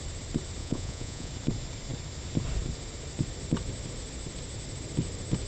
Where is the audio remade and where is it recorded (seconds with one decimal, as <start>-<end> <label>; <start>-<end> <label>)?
0.0-0.6 recorded; 0.6-1.3 remade; 1.3-5.5 recorded